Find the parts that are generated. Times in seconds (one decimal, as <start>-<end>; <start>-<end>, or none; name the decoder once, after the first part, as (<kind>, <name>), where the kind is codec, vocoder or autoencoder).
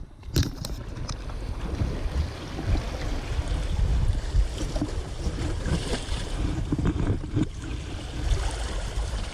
0.0-0.8 (vocoder, BigVGAN v2); 5.0-7.7; 8.8-9.3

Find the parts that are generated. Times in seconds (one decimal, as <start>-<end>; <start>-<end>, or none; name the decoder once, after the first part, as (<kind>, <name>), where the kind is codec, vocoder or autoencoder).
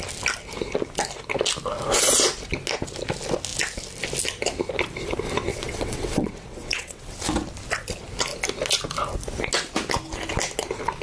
5.5-7.2 (vocoder, WaveNeXt)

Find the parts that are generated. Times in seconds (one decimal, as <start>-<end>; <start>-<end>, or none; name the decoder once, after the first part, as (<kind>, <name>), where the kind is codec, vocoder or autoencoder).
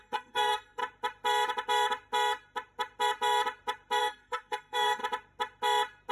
0.0-0.8 (codec, SNAC); 4.0-5.0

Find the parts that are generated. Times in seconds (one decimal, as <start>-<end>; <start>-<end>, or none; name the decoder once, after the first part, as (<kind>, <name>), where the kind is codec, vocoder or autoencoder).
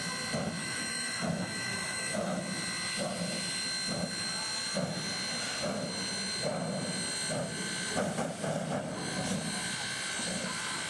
0.6-2.4 (autoencoder, DAC-VAE)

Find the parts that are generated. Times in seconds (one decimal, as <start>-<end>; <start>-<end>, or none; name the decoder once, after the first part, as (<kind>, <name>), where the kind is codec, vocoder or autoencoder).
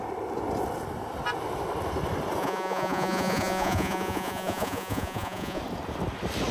2.4-5.6 (vocoder, Vocos)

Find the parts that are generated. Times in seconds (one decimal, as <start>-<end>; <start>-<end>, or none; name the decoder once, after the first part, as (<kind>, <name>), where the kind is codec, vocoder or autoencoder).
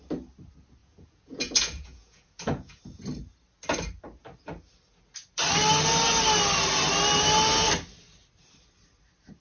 0.8-2.8 (vocoder, Vocos)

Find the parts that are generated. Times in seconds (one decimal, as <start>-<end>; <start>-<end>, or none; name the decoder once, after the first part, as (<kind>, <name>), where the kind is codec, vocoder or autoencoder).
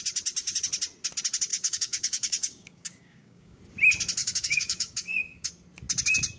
1.5-3.6 (codec, DAC); 4.2-5.5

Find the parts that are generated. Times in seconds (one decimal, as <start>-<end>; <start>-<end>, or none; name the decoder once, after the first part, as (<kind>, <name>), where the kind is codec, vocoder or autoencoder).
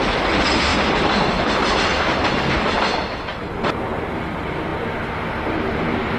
none